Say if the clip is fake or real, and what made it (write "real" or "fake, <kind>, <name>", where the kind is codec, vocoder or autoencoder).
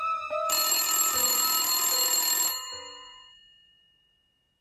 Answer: fake, vocoder, BigVGAN v2